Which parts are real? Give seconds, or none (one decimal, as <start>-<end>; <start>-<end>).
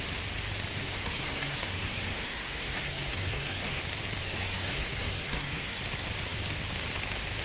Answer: 0.0-0.8; 3.8-4.2; 5.8-7.4